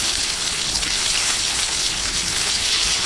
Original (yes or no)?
no